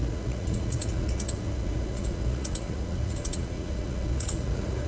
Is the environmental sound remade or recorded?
remade